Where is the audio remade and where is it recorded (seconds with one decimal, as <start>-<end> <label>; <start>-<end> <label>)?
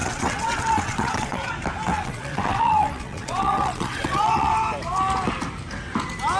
0.0-1.5 remade; 1.5-1.9 recorded; 1.9-4.5 remade; 4.5-6.4 recorded